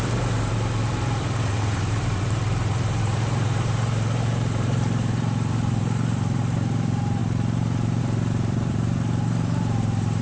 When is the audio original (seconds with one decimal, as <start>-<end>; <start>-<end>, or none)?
7.2-8.0